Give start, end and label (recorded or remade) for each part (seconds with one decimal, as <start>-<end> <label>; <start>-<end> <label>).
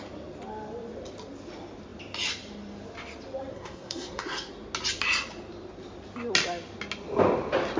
0.0-3.5 recorded; 3.5-4.5 remade; 4.5-7.8 recorded